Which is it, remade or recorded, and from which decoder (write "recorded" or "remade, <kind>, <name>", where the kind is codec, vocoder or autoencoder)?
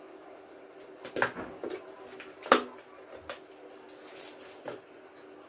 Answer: recorded